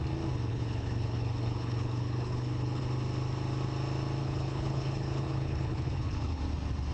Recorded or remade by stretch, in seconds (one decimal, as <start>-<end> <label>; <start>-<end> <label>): 0.0-0.5 recorded; 0.5-2.8 remade; 2.8-4.2 recorded; 4.2-6.4 remade; 6.4-6.9 recorded